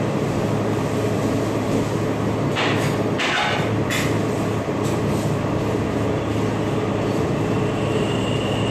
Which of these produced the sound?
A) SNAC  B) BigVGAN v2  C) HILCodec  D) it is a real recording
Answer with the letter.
B